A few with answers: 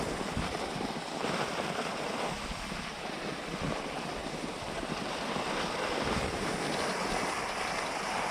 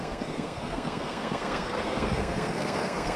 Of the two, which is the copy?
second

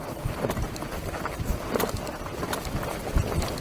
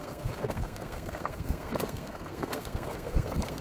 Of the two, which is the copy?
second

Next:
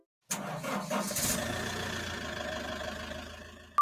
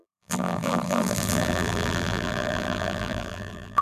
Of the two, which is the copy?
second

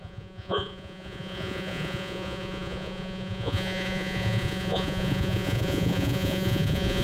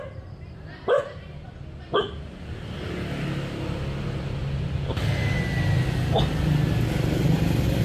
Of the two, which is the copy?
first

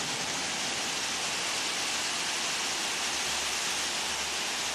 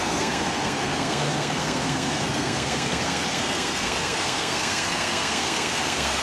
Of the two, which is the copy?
second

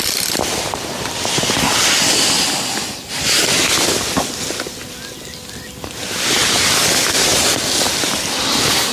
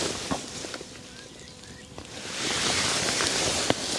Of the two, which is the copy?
second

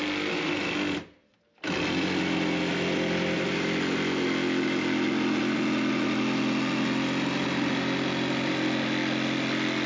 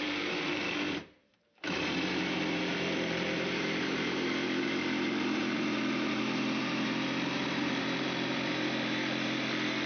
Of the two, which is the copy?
second